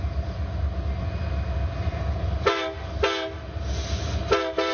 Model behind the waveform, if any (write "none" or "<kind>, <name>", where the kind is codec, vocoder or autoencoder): none